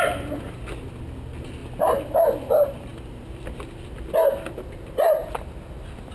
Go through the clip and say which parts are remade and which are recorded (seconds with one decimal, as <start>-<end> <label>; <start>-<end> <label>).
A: 0.0-6.1 recorded